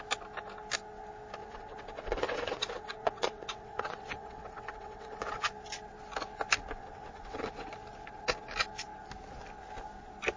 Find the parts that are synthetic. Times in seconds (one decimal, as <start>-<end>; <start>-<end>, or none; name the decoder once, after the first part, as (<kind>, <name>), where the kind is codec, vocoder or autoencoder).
1.4-5.5 (vocoder, WaveNeXt); 6.8-7.7